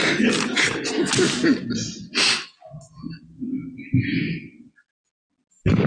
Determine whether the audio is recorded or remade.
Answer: recorded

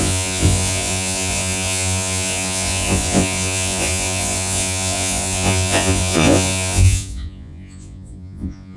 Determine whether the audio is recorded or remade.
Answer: remade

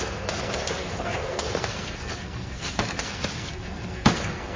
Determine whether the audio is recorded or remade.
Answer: remade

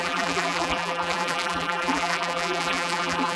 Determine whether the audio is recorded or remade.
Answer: remade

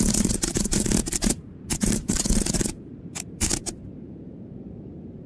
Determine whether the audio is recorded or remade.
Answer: remade